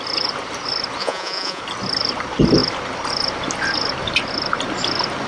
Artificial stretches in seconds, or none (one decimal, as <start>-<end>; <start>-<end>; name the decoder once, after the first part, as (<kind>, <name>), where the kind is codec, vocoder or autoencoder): 1.0-1.6 (vocoder, Vocos)